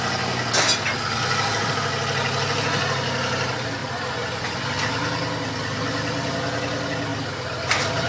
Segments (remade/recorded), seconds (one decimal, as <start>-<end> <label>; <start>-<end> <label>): 0.0-3.8 recorded; 3.8-4.6 remade; 4.6-8.1 recorded